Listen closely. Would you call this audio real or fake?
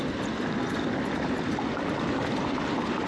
real